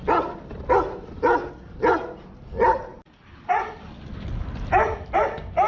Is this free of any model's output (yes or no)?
yes